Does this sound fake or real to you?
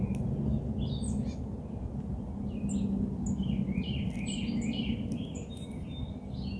real